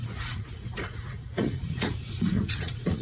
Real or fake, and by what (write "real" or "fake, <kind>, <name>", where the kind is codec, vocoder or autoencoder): fake, vocoder, Vocos